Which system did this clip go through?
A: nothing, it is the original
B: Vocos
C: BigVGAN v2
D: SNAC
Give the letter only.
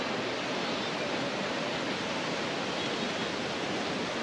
A